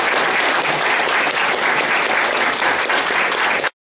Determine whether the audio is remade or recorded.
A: recorded